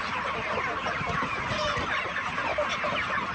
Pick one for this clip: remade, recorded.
recorded